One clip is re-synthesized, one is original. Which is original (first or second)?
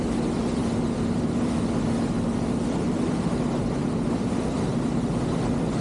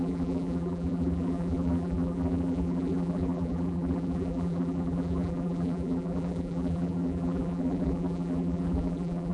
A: first